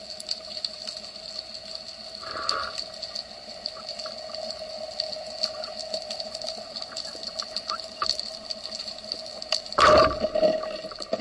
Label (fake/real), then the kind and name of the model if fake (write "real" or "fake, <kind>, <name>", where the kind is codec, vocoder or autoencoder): real